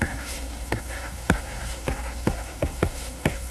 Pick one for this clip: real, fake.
fake